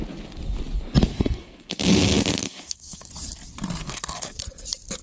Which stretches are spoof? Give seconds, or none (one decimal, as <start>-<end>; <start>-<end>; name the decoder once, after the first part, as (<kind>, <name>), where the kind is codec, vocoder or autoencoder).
1.1-1.7 (codec, SNAC); 2.4-3.1; 3.8-4.4